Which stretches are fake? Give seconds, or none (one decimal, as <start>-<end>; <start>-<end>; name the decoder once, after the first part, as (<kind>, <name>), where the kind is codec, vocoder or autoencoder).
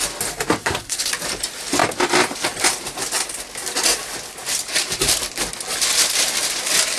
0.6-1.1 (codec, SNAC)